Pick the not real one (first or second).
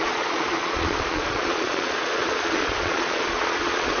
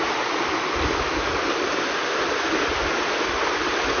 first